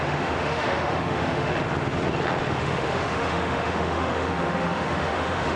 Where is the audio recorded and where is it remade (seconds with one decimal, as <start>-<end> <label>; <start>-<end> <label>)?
0.0-1.5 remade; 1.5-2.6 recorded; 2.6-5.6 remade